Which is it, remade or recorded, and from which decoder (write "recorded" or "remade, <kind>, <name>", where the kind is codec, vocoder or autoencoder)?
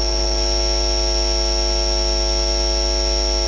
recorded